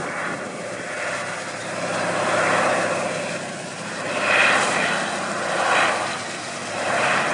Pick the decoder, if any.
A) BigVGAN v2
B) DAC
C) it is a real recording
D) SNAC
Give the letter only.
C